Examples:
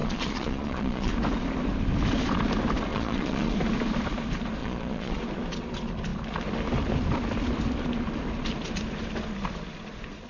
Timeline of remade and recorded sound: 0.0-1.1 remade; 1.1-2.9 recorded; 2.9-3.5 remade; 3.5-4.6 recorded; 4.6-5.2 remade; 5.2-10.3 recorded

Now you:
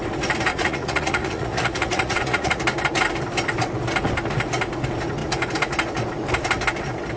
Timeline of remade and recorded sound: 0.0-0.5 recorded; 0.5-2.6 remade; 2.6-7.2 recorded

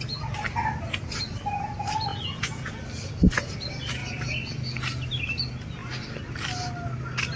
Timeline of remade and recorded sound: 0.0-2.1 recorded; 2.1-2.8 remade; 2.8-7.4 recorded

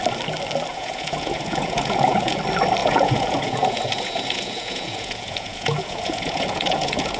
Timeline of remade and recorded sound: 0.0-0.7 recorded; 0.7-2.4 remade; 2.4-2.8 recorded; 2.8-7.2 remade

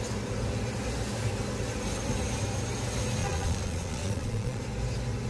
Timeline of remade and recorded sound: 0.0-3.2 recorded; 3.2-4.6 remade; 4.6-5.3 recorded

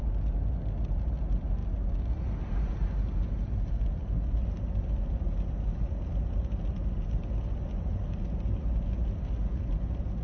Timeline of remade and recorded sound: 0.0-10.2 recorded

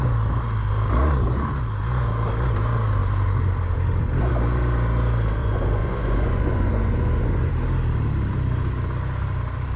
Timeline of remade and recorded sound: 0.0-5.4 recorded; 5.4-7.5 remade; 7.5-9.8 recorded

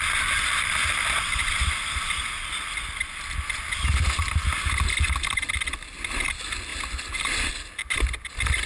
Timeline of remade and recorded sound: 0.0-8.7 recorded